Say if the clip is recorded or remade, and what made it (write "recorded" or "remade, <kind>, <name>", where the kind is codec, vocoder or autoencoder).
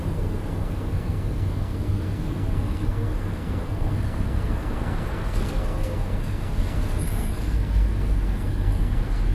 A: remade, codec, SNAC